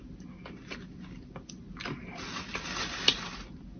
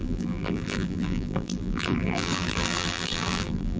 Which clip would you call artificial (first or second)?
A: second